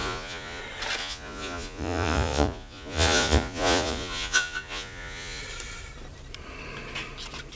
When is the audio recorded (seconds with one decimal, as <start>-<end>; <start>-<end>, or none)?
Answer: 0.6-1.0; 5.4-7.6